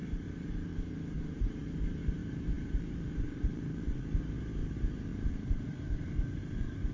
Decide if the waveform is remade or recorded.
remade